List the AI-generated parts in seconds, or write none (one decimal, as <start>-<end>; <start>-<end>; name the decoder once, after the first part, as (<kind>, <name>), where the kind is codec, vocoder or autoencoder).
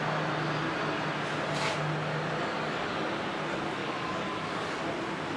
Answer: 2.4-3.1 (codec, DAC); 3.8-4.8